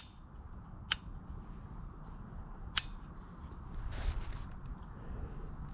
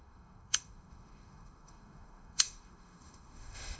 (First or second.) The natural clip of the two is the first